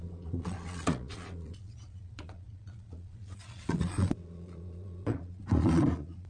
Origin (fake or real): fake